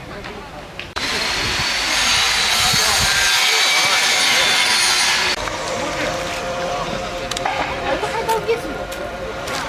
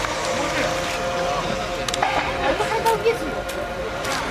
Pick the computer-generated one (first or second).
first